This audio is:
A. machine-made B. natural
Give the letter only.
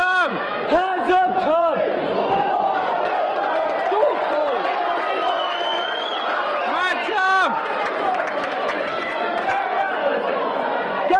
A